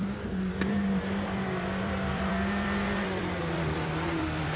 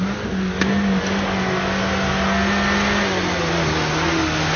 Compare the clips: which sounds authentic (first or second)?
second